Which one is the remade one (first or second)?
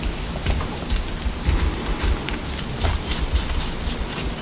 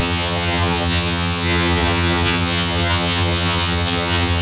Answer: second